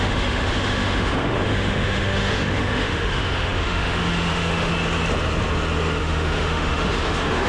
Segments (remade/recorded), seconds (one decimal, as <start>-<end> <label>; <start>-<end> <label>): 0.0-4.7 remade; 4.7-6.0 recorded; 6.0-7.5 remade